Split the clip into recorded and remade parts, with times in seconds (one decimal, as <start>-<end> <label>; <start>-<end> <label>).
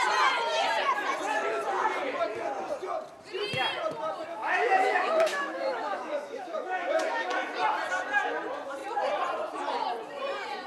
0.0-4.3 recorded; 4.3-7.3 remade; 7.3-10.7 recorded